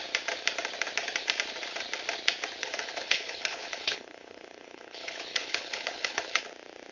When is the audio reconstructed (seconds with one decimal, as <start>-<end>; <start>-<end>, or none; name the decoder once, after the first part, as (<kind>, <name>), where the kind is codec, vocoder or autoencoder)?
2.6-6.4 (codec, HILCodec)